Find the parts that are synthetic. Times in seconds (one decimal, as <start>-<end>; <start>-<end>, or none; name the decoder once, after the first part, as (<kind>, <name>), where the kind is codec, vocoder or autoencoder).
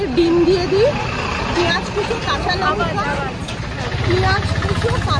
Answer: none